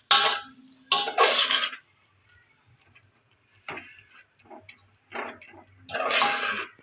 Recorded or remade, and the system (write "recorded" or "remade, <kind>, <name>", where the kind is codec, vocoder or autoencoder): recorded